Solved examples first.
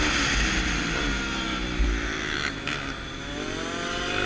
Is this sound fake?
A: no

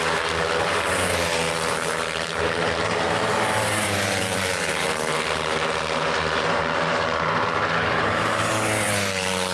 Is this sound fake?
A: yes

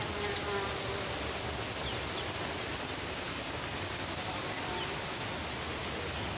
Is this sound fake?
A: no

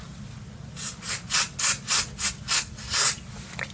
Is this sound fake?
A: no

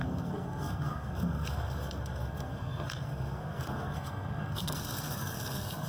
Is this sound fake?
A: yes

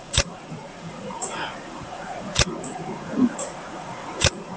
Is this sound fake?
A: yes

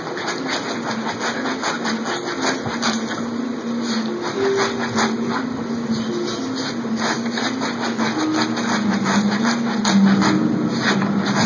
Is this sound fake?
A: no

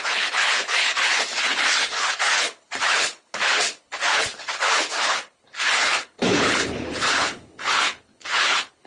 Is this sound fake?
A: yes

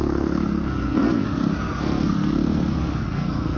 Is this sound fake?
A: yes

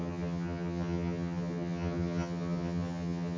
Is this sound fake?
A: yes